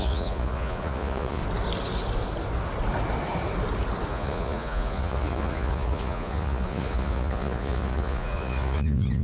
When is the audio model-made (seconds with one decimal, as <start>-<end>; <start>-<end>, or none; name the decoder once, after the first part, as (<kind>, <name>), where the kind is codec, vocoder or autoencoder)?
0.0-1.4 (vocoder, Vocos); 4.1-9.2

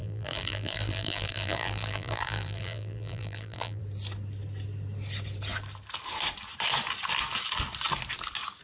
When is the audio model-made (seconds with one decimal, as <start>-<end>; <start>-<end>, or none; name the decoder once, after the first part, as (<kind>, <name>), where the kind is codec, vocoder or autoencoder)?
0.0-3.8 (vocoder, BigVGAN v2)

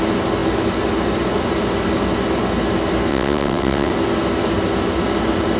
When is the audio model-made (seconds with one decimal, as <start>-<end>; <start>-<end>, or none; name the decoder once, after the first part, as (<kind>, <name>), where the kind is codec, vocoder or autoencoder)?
3.1-3.9 (vocoder, WaveNeXt)

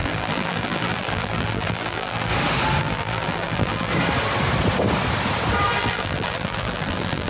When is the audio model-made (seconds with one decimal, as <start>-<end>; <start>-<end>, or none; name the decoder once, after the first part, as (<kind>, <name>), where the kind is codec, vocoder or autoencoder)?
0.0-2.3 (vocoder, BigVGAN v2); 2.8-3.9; 5.8-7.3

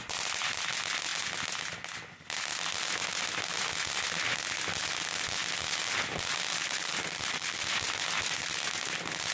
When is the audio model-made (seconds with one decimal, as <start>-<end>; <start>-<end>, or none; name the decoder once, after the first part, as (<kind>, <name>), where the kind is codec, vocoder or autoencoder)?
6.6-7.7 (vocoder, BigVGAN v2)

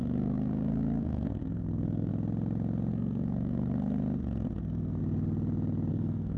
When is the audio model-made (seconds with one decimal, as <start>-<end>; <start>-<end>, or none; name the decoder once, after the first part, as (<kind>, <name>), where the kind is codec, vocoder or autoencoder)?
0.0-2.1 (codec, SNAC); 2.9-4.0; 4.6-5.0; 5.9-6.4

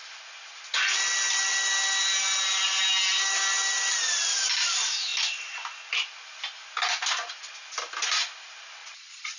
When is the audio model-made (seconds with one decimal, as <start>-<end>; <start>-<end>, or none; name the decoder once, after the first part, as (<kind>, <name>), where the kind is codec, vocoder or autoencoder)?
8.8-9.4 (vocoder, Vocos)

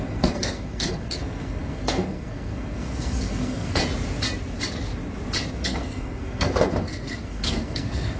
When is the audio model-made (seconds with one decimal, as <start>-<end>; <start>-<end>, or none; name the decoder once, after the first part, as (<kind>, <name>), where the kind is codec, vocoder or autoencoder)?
0.0-3.8 (codec, SNAC); 5.5-8.2